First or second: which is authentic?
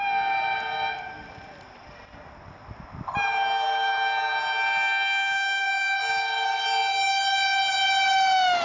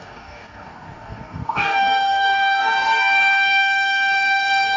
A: first